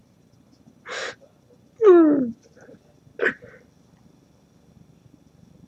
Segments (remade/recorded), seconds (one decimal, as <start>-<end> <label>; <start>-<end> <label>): 0.0-5.7 recorded